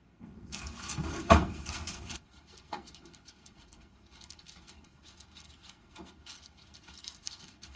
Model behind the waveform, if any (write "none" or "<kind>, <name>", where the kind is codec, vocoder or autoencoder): codec, SNAC